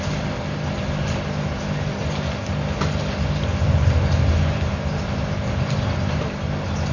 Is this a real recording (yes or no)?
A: yes